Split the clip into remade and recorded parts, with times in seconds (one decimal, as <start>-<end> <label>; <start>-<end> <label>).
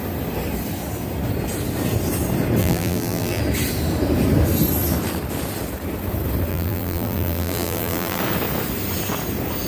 0.0-2.6 recorded; 2.6-3.4 remade; 3.4-6.5 recorded; 6.5-8.2 remade; 8.2-9.7 recorded